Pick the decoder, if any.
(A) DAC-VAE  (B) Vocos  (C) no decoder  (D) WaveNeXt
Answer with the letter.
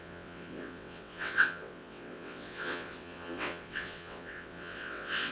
D